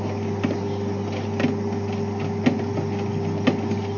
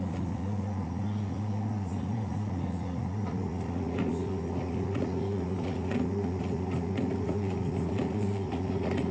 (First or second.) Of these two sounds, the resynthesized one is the second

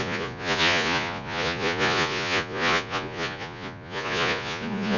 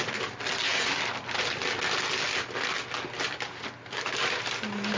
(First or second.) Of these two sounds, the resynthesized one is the first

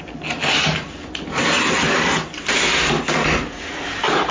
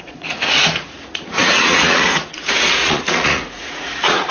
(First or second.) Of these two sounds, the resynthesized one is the second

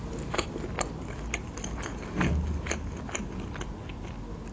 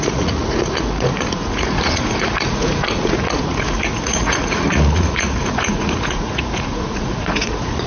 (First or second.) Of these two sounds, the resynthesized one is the second